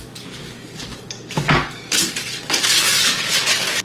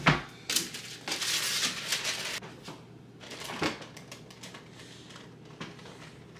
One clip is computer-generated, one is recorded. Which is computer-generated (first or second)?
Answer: first